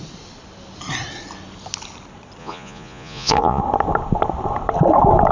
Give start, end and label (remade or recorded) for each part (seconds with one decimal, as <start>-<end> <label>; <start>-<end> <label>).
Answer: 0.0-2.4 recorded; 2.4-3.6 remade; 3.6-5.3 recorded